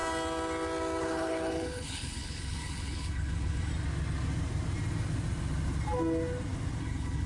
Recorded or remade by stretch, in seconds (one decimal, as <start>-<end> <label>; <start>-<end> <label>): 0.0-1.0 recorded; 1.0-3.7 remade; 3.7-6.8 recorded; 6.8-7.3 remade

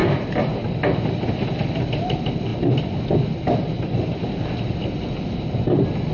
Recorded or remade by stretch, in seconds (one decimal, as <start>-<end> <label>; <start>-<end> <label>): 0.0-6.1 recorded

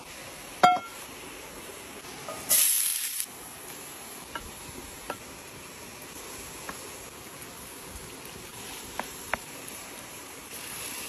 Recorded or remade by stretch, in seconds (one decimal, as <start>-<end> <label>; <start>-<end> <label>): 0.0-0.9 recorded; 0.9-1.8 remade; 1.8-2.9 recorded; 2.9-5.2 remade; 5.2-8.5 recorded; 8.5-11.1 remade

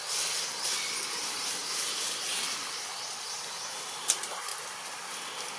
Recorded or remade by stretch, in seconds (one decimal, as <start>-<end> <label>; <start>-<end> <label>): 0.0-1.1 recorded; 1.1-1.6 remade; 1.6-3.1 recorded; 3.1-4.5 remade; 4.5-5.6 recorded

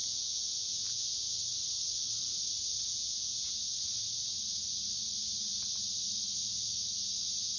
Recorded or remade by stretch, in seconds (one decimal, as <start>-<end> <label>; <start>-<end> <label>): 0.0-1.4 remade; 1.4-2.9 recorded; 2.9-3.5 remade; 3.5-7.6 recorded

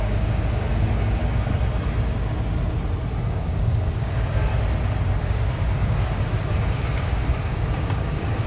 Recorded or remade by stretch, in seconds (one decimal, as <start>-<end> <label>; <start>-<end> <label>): 0.0-1.2 remade; 1.2-3.3 recorded; 3.3-4.5 remade; 4.5-5.2 recorded; 5.2-8.5 remade

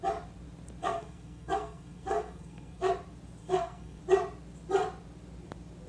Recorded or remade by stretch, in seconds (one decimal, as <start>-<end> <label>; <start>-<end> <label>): 0.0-0.8 recorded; 0.8-2.9 remade; 2.9-3.4 recorded; 3.4-4.0 remade; 4.0-5.9 recorded